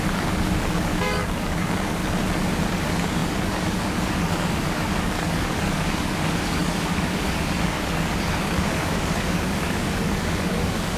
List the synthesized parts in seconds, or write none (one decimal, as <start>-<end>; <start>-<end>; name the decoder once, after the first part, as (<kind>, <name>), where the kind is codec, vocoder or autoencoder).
0.0-2.0 (codec, DAC); 2.7-11.0